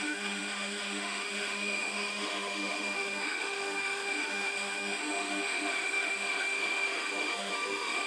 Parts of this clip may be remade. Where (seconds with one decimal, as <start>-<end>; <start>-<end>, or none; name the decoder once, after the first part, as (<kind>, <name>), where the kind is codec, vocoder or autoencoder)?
0.0-8.1 (autoencoder, DAC-VAE)